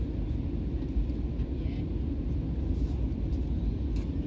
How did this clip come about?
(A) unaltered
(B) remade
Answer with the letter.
A